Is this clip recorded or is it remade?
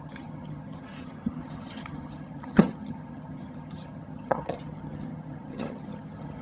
remade